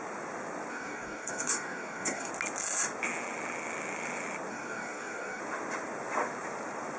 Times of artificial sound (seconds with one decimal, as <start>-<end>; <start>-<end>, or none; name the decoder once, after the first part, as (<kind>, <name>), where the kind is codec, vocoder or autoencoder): 0.7-2.3 (codec, DAC); 4.5-5.4